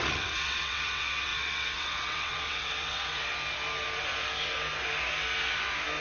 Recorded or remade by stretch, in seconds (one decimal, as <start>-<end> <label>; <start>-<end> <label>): 0.0-3.3 remade; 3.3-6.0 recorded